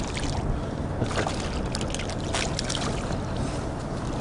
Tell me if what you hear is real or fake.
real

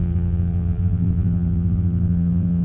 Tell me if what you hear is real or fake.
fake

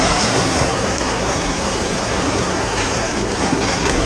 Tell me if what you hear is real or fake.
fake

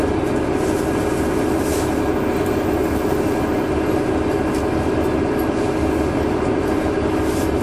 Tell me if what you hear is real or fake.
real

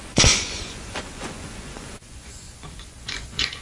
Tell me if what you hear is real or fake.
fake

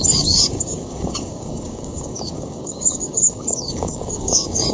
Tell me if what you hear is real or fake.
fake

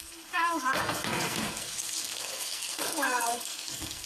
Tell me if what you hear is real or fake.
fake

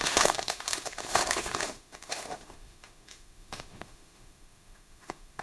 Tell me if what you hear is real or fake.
fake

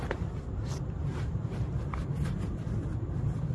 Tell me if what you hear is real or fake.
real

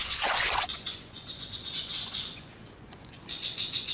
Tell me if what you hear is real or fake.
fake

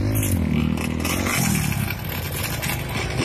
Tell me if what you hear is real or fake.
real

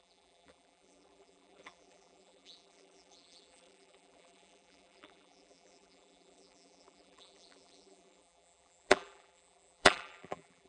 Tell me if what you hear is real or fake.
fake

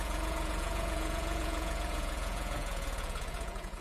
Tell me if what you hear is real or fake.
fake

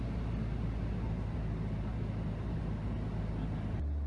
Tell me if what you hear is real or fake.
real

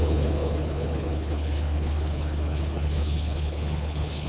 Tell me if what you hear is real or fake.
fake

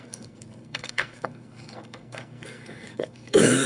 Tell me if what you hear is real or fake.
fake